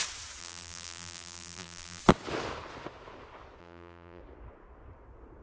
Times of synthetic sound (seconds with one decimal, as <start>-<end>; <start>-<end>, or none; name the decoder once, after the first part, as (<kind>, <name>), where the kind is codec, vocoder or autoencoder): 0.4-2.0 (vocoder, BigVGAN v2); 3.6-4.2